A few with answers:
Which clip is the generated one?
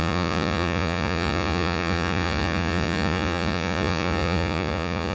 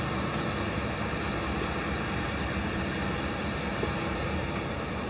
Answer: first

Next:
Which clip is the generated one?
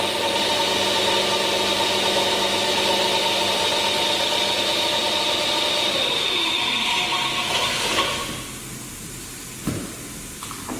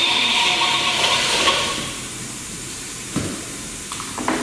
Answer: second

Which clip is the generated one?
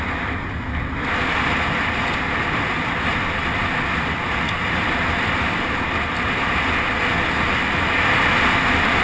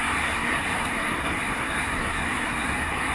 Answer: second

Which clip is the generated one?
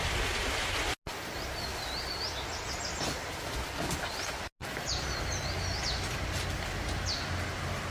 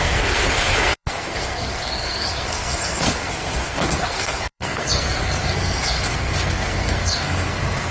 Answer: second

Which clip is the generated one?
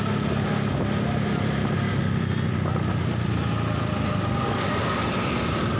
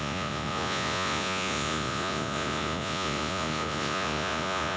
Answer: second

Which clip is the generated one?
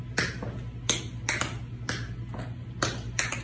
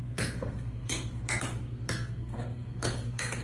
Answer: second